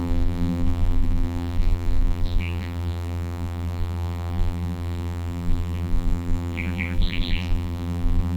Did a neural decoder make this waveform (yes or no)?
yes